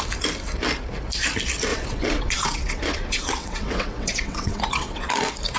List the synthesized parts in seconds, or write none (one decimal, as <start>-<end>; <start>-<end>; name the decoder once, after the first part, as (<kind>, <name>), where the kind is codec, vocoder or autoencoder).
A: 1.7-5.1 (vocoder, WaveNeXt)